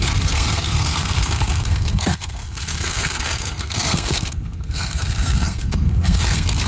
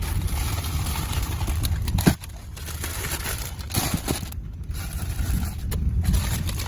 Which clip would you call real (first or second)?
second